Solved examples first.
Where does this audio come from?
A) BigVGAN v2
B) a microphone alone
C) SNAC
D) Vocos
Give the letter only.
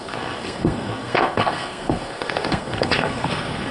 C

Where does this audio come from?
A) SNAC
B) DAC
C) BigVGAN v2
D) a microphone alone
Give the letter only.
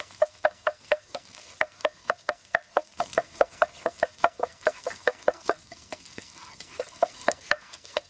A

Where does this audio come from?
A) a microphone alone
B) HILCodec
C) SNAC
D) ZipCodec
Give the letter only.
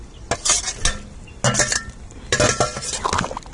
A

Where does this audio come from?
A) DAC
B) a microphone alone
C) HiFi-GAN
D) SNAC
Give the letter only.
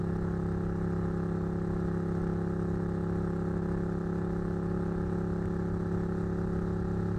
B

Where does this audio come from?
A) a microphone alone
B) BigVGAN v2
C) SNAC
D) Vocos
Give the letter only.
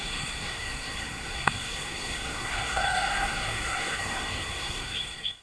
C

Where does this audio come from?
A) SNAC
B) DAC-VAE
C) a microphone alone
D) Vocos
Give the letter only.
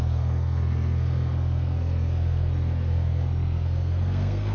A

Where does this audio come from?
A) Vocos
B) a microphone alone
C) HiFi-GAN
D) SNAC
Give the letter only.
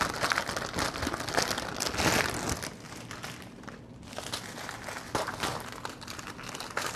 B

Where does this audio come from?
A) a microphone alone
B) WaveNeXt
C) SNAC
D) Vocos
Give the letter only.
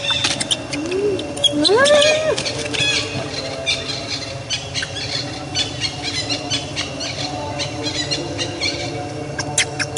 A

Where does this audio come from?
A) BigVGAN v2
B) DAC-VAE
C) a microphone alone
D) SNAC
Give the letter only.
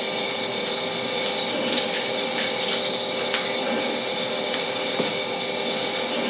C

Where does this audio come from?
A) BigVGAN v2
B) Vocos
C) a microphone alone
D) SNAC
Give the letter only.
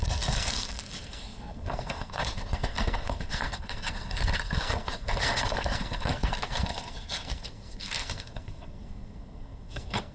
D